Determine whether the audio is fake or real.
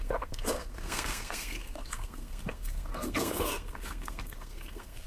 fake